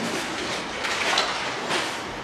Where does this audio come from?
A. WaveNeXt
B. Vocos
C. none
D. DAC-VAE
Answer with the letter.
C